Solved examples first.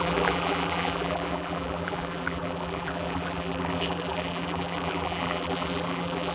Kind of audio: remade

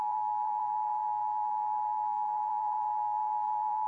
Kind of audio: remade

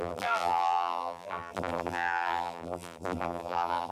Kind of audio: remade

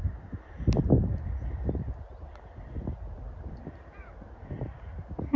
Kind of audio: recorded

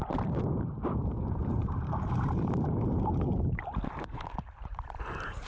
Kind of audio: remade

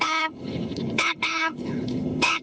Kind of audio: remade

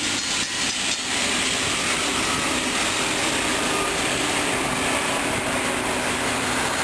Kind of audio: recorded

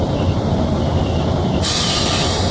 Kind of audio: recorded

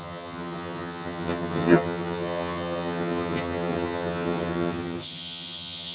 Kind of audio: remade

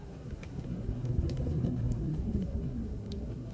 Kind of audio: remade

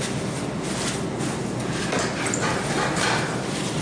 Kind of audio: recorded